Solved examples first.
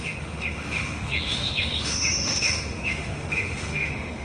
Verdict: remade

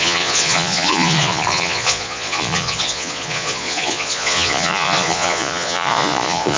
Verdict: remade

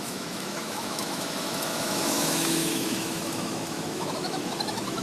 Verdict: remade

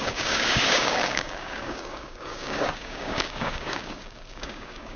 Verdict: remade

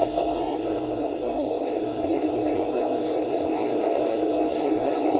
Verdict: remade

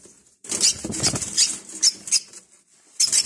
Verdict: recorded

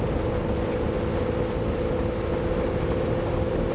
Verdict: recorded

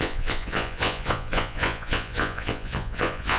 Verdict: remade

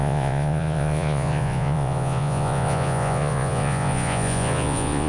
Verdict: remade